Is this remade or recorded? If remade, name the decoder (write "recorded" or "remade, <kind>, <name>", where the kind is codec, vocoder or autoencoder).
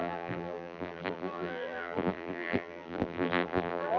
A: remade, vocoder, BigVGAN v2